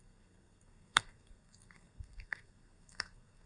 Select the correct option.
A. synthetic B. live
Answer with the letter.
A